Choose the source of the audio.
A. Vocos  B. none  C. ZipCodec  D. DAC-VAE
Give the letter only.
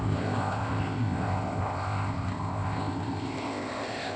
C